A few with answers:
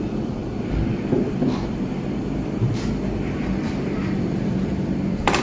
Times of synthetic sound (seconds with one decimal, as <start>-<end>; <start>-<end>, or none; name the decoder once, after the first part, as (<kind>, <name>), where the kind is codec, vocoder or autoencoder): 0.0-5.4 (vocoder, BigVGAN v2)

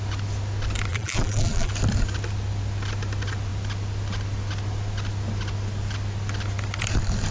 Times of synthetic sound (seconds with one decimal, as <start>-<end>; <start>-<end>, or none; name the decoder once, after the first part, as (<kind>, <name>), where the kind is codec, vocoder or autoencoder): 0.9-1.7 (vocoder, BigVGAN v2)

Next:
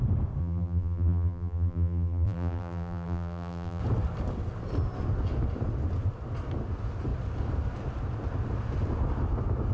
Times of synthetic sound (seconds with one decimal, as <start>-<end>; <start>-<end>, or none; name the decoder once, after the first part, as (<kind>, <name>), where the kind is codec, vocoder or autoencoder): 0.4-3.8 (vocoder, BigVGAN v2)

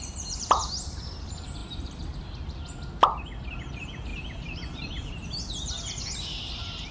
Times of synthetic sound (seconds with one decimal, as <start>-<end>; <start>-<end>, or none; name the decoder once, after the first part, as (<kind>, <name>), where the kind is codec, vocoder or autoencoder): 0.0-1.6 (vocoder, BigVGAN v2); 3.6-4.1; 6.1-6.9

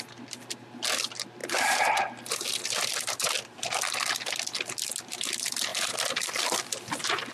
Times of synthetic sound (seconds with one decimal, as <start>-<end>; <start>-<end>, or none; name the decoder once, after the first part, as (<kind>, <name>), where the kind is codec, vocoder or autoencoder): none